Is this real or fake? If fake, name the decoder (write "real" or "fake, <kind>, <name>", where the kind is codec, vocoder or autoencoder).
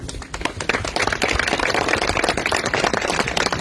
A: real